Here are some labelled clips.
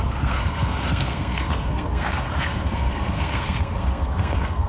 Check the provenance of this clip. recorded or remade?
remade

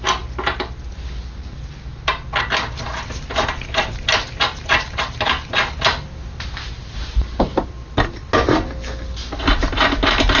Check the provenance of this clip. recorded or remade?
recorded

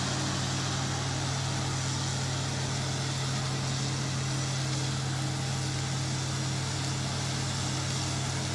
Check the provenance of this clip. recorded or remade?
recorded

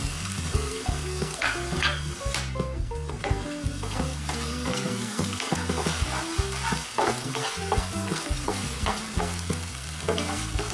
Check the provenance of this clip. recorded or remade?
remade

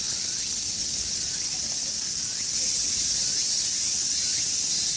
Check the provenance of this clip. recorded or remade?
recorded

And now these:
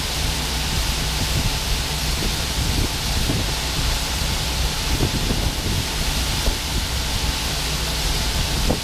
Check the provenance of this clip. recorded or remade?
remade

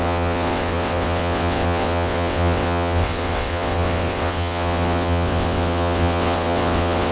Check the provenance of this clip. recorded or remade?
remade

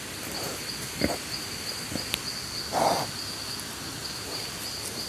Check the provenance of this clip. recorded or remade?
recorded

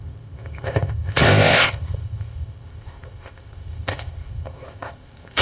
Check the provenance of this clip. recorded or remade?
remade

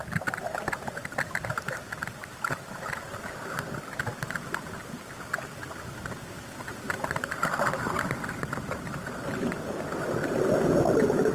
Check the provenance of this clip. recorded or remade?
recorded